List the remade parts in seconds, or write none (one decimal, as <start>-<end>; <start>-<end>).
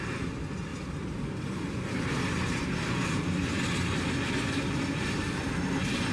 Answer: 0.7-4.3